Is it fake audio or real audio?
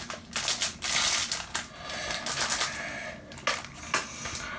real